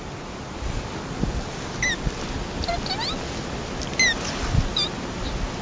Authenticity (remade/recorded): recorded